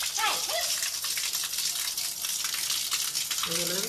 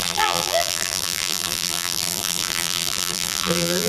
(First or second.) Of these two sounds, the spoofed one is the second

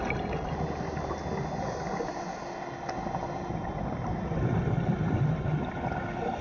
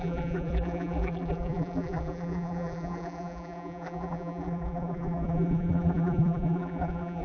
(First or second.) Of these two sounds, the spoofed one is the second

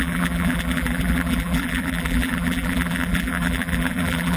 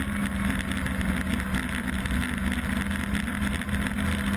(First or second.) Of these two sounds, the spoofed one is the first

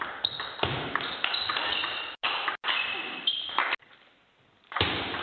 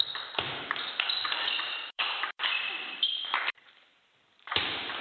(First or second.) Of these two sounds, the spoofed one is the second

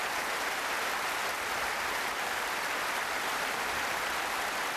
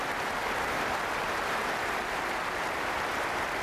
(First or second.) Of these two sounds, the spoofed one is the first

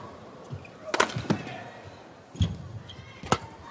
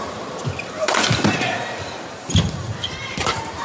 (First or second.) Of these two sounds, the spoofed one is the second